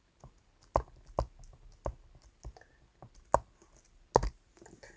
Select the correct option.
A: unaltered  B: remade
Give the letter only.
A